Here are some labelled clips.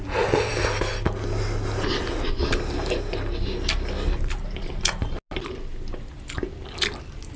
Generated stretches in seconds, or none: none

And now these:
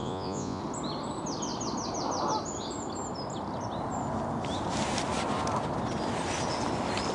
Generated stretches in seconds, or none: 0.0-0.6

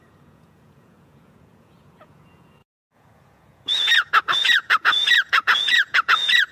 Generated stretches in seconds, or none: 0.0-6.5